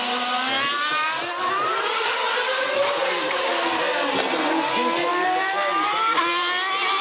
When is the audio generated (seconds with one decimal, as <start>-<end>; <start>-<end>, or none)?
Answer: 0.9-3.5; 5.1-6.1